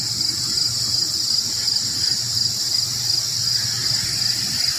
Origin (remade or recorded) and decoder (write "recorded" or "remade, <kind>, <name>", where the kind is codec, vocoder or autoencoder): recorded